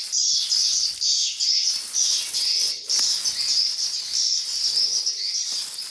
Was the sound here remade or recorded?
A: recorded